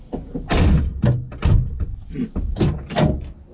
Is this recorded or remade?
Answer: recorded